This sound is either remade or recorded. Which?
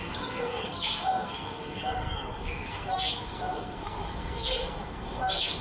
remade